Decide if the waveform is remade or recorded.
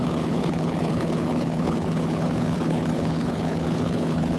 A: remade